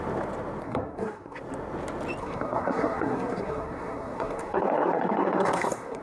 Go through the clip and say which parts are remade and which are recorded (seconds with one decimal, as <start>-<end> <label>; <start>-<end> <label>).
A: 0.0-0.6 recorded; 0.6-1.4 remade; 1.4-2.2 recorded; 2.2-6.0 remade